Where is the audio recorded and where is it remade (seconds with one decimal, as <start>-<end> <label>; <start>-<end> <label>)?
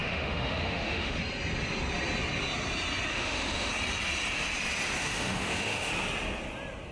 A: 0.0-1.2 remade; 1.2-3.1 recorded; 3.1-3.7 remade; 3.7-5.0 recorded; 5.0-5.9 remade; 5.9-6.9 recorded